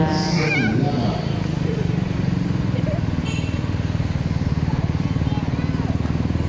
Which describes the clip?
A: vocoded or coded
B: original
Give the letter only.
B